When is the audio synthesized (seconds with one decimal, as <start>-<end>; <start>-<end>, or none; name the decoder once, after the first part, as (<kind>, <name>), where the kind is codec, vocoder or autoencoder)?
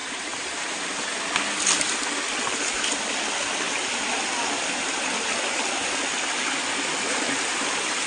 0.0-1.2 (vocoder, BigVGAN v2)